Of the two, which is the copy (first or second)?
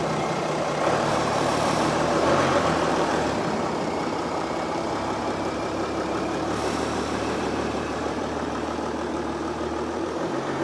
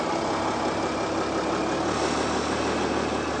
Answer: first